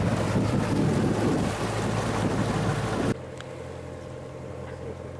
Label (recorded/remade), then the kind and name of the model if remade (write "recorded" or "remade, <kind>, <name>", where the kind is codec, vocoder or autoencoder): recorded